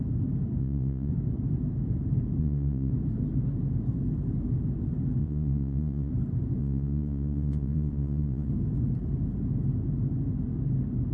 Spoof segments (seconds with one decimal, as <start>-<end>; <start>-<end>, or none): 0.6-1.1; 2.4-2.9; 5.2-6.1; 6.6-8.5